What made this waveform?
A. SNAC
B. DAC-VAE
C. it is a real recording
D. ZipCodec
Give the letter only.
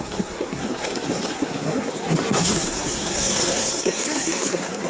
A